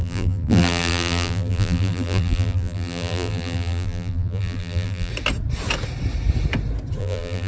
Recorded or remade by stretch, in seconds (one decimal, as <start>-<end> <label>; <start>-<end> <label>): 0.0-5.1 remade; 5.1-7.0 recorded; 7.0-7.5 remade